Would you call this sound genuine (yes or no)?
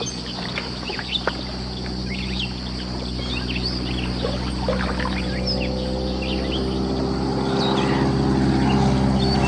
yes